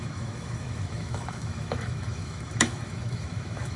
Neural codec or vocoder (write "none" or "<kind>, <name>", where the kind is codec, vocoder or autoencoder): autoencoder, DAC-VAE